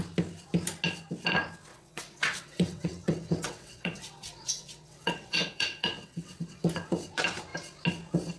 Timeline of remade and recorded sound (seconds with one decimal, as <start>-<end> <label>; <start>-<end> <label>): 0.0-1.7 recorded; 1.7-6.7 remade; 6.7-8.4 recorded